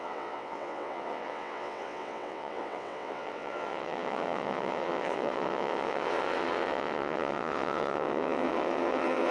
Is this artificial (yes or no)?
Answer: yes